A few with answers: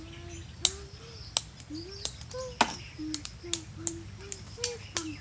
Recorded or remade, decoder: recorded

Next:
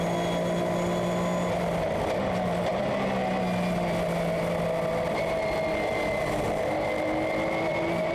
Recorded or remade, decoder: recorded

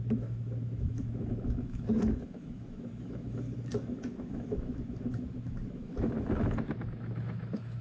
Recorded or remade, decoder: remade, autoencoder, DAC-VAE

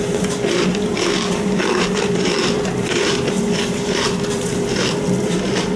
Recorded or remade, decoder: remade, vocoder, BigVGAN v2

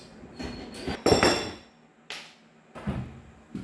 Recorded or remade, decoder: recorded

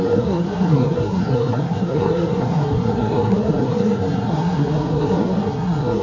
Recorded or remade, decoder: remade, codec, SNAC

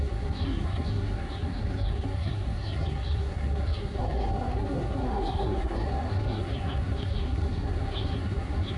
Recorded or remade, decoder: remade, codec, SNAC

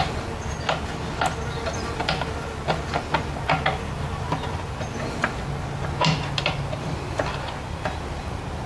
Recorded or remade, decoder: recorded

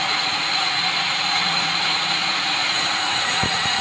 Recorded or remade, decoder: remade, vocoder, Vocos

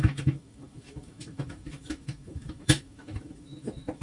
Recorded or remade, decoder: remade, autoencoder, DAC-VAE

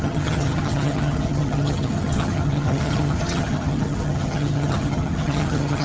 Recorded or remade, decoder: remade, vocoder, HiFi-GAN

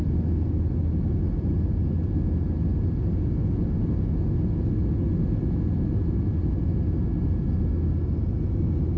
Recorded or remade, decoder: recorded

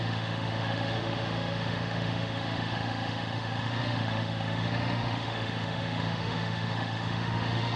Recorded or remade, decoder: remade, autoencoder, DAC-VAE